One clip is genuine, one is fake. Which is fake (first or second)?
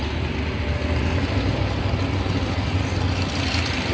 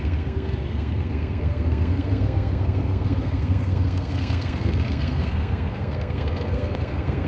second